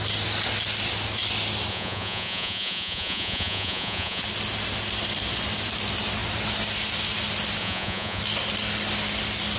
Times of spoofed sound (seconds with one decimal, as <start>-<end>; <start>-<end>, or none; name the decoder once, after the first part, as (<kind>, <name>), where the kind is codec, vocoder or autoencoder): 1.7-4.2 (vocoder, Vocos); 7.6-8.2